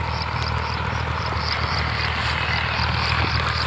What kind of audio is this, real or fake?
real